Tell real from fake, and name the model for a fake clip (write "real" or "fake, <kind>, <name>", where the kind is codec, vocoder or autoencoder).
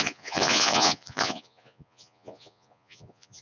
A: fake, vocoder, Vocos